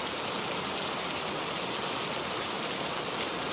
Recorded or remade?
recorded